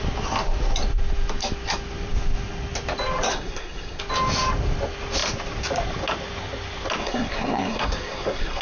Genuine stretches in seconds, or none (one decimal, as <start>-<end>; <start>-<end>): 0.0-3.3; 4.0-7.0